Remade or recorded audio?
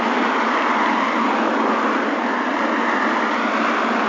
recorded